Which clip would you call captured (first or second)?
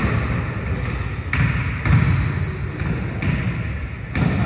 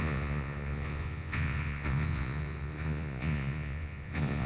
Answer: first